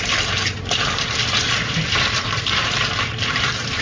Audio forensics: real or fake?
fake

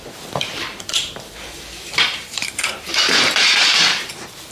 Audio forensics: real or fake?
fake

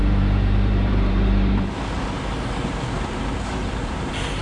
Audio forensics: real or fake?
fake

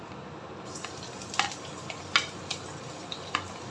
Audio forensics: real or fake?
real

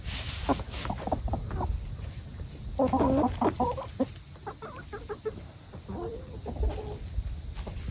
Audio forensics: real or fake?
real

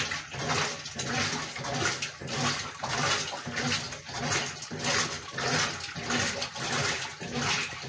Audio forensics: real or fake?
real